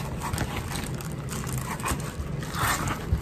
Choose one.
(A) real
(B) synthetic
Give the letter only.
A